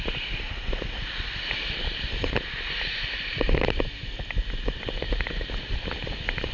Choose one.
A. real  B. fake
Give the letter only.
A